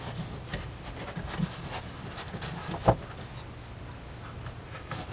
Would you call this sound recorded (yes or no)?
yes